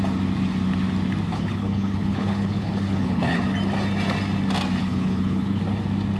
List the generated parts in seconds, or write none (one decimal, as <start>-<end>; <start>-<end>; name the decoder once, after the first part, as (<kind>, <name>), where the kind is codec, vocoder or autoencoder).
1.3-3.4 (codec, HILCodec); 4.8-5.6